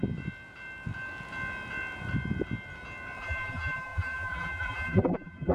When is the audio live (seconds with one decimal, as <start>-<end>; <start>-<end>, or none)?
0.0-3.2